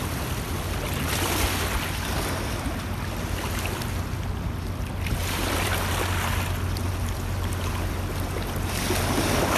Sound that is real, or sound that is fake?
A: real